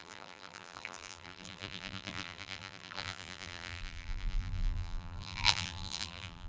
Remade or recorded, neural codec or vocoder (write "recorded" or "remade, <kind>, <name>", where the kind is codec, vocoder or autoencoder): remade, vocoder, BigVGAN v2